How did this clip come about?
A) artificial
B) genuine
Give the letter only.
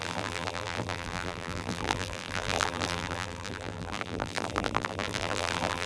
A